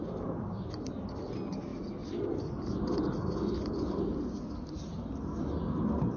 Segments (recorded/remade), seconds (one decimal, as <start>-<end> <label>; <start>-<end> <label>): 0.0-6.2 recorded